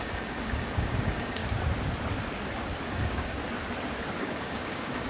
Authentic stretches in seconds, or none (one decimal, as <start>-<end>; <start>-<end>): 1.4-2.9; 3.4-4.2